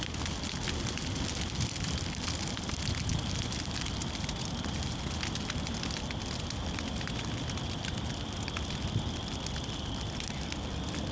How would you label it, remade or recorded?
recorded